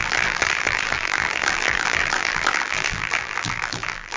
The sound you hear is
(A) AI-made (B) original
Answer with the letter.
A